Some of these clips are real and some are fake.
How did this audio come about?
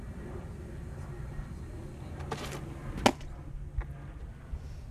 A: real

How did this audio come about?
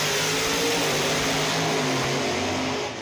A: real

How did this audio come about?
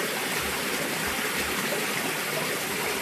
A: real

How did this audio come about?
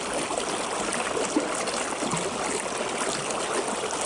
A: real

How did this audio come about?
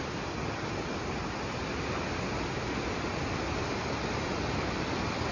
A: real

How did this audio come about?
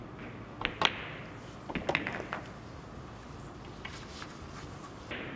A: real